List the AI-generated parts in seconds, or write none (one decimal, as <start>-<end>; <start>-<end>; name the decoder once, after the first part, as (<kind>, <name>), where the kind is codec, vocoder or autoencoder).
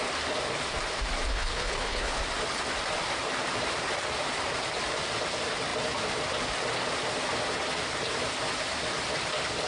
1.3-2.2 (codec, HILCodec)